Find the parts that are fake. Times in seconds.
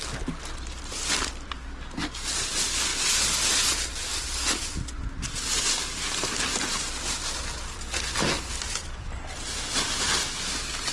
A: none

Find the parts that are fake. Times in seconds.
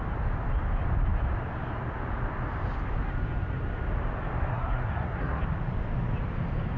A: 4.5-5.4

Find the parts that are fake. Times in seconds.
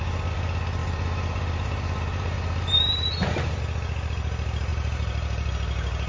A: 0.8-3.6; 4.7-5.5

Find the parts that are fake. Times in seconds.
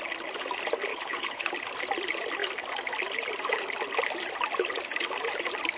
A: 0.9-1.5